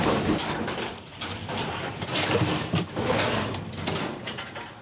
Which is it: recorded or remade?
remade